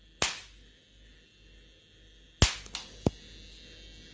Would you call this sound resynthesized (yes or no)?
no